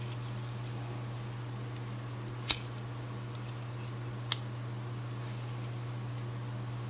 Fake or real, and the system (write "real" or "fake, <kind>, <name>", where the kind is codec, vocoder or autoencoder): real